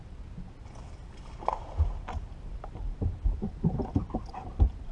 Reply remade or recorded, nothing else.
recorded